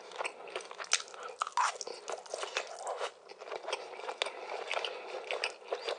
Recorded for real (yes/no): yes